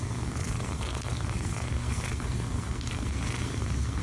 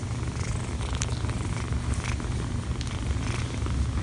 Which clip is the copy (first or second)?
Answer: first